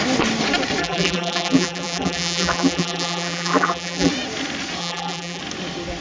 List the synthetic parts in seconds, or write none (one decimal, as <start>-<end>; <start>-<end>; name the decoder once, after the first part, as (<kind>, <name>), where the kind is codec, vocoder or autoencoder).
0.8-4.1 (vocoder, BigVGAN v2); 4.8-5.4